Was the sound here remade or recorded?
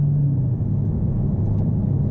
recorded